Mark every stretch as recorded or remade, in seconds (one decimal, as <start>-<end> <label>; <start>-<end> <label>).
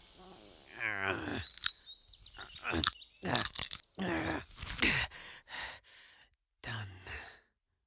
0.0-7.9 recorded